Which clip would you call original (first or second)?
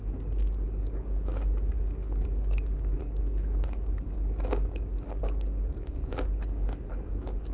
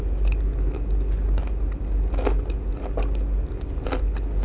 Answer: second